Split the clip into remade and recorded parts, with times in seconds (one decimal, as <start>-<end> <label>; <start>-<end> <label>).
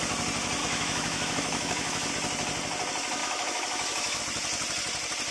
0.0-0.6 recorded; 0.6-2.1 remade; 2.1-3.2 recorded; 3.2-4.2 remade; 4.2-5.3 recorded